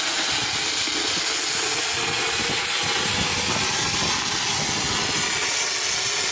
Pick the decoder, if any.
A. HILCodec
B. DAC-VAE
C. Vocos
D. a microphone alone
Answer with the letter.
D